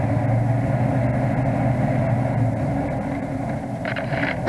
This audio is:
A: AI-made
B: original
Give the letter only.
B